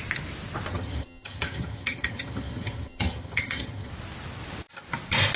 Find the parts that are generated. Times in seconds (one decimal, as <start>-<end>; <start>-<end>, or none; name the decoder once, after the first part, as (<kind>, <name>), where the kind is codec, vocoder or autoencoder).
0.7-3.9 (vocoder, HiFi-GAN)